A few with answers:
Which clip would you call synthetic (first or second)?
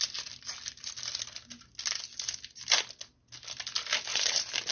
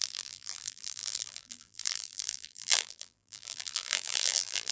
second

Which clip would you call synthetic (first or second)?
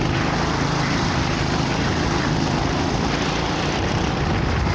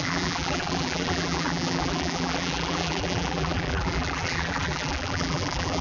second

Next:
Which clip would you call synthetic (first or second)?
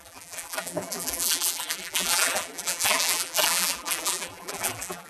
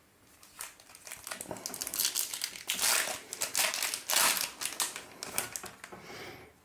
first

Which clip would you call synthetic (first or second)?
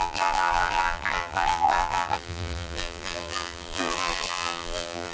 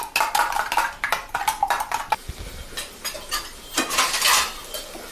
first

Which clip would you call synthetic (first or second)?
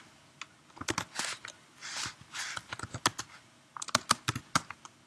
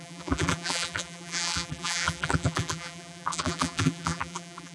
second